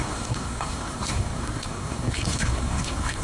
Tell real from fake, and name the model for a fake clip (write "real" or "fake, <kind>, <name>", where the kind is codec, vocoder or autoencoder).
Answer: fake, codec, SNAC